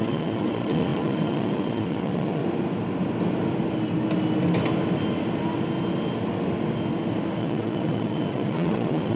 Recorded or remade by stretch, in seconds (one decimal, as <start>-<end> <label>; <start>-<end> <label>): 0.0-2.4 remade; 2.4-7.4 recorded; 7.4-9.2 remade